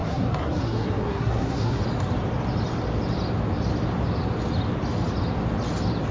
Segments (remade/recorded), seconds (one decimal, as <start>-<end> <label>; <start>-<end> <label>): 0.0-1.8 remade; 1.8-6.1 recorded